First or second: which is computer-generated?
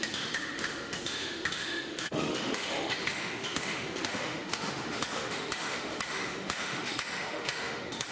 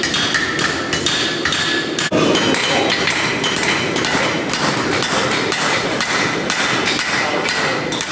first